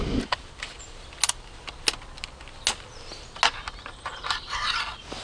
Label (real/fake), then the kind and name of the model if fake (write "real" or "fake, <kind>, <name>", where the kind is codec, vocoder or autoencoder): real